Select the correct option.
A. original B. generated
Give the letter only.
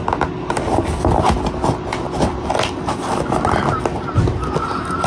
A